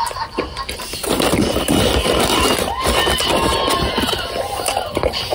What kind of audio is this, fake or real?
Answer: real